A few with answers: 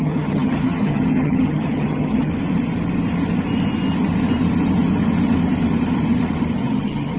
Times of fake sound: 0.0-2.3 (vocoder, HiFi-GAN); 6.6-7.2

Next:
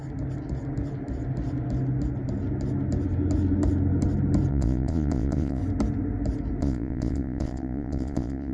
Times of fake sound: 4.5-5.6 (vocoder, Vocos); 6.6-8.5

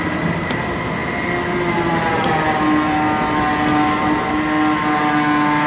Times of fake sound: none

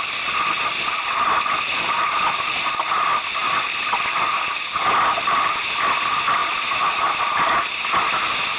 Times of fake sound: none

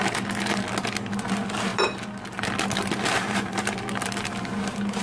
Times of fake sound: none

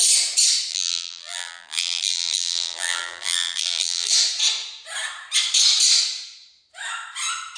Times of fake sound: 0.7-4.1 (vocoder, BigVGAN v2)

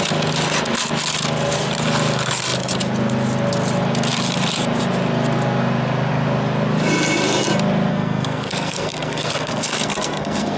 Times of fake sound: 7.9-10.6 (codec, SNAC)